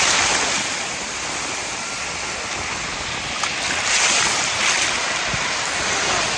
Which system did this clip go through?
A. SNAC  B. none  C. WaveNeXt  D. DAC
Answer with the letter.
B